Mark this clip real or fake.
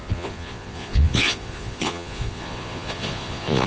fake